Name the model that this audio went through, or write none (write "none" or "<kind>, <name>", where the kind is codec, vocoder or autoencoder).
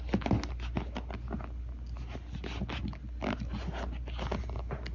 none